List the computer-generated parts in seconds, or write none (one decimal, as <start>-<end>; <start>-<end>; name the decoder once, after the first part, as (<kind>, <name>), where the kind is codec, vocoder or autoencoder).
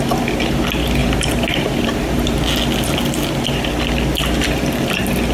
1.0-2.4 (vocoder, BigVGAN v2)